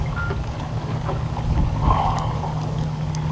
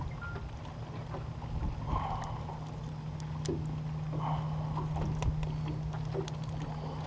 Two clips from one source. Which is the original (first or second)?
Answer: second